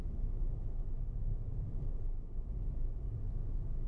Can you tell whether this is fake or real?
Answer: real